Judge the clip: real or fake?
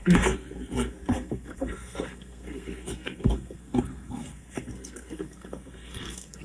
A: fake